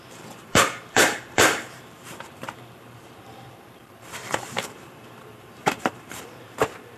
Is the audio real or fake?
fake